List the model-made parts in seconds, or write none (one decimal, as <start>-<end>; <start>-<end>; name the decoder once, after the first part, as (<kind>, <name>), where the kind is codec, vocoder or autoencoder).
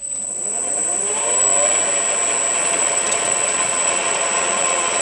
2.6-5.0 (vocoder, Vocos)